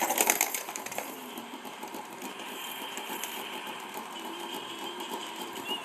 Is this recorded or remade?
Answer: remade